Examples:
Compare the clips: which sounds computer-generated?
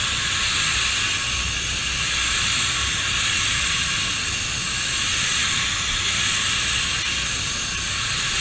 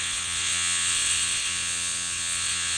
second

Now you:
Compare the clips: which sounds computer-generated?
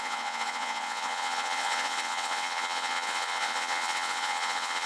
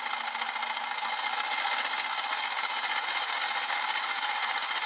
first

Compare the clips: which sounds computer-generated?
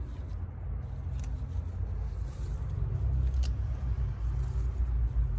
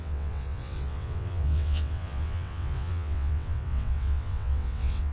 second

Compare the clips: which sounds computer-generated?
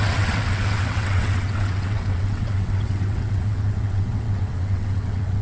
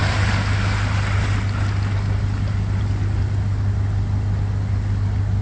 first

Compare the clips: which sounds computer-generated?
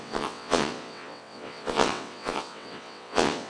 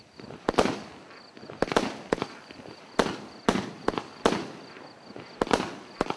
first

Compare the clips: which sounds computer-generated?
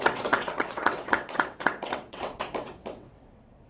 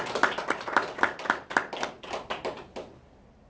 first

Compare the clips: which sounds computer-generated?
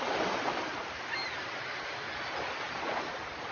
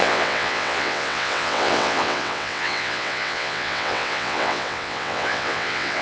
second